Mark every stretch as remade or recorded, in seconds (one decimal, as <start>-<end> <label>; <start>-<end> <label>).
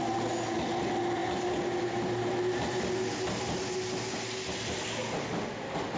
0.0-6.0 recorded